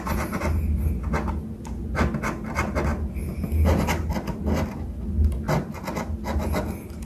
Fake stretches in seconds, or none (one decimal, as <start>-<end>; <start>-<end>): none